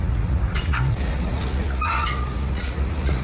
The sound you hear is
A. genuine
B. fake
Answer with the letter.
B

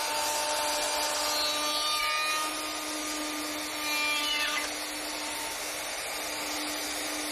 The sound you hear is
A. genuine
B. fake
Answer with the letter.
A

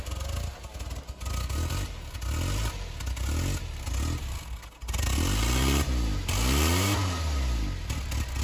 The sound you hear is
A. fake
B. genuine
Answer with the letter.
B